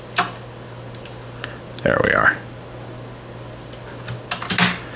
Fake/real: real